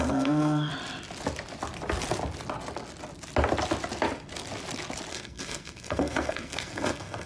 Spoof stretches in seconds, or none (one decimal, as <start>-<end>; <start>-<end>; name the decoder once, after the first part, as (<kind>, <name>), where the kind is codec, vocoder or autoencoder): 0.0-0.7 (codec, SNAC); 5.1-7.3